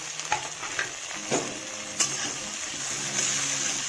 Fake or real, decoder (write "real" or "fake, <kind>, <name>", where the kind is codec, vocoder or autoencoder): real